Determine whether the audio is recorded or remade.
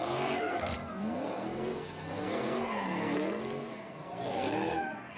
remade